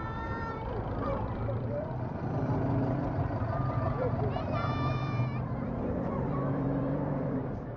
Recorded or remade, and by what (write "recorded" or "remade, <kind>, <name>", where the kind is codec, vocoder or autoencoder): remade, vocoder, BigVGAN v2